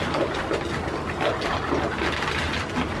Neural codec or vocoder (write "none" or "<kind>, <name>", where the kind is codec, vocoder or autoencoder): none